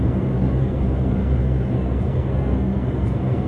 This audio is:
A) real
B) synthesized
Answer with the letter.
B